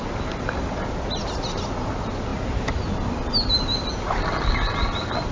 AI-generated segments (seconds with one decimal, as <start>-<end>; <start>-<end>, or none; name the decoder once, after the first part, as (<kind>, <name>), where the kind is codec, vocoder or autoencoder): none